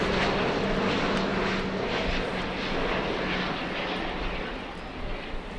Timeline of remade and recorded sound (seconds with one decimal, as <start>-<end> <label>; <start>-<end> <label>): 0.0-5.6 recorded